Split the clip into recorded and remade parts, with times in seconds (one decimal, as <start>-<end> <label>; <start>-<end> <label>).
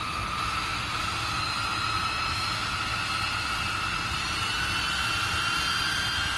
0.0-0.7 recorded; 0.7-1.4 remade; 1.4-6.4 recorded